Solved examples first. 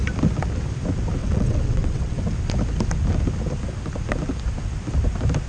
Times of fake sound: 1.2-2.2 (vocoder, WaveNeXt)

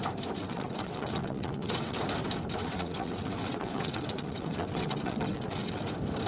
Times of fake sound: 0.4-2.0 (vocoder, WaveNeXt); 2.6-5.8